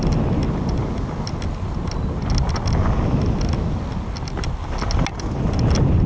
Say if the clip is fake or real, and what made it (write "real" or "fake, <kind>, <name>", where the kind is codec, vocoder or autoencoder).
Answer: real